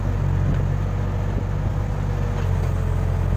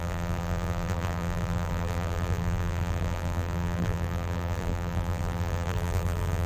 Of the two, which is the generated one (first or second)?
second